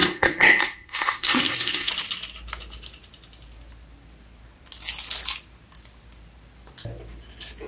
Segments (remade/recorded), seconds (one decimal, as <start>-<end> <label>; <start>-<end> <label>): 0.0-1.9 remade; 1.9-7.7 recorded